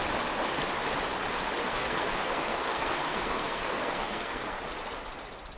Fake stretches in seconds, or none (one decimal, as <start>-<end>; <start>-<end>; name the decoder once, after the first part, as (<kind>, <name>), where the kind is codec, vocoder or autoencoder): 1.6-4.6 (codec, SNAC)